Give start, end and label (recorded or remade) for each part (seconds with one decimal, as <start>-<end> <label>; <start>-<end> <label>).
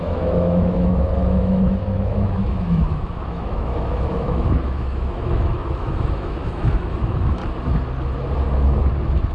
0.0-7.4 remade; 7.4-9.3 recorded